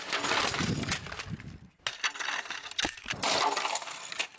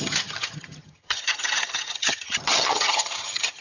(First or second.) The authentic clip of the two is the first